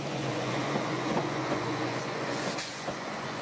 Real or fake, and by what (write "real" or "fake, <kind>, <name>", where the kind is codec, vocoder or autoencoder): fake, vocoder, Vocos